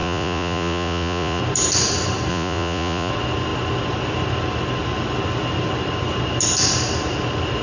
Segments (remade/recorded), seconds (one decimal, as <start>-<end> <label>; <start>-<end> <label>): 0.0-1.4 remade; 1.4-2.3 recorded; 2.3-3.1 remade; 3.1-7.6 recorded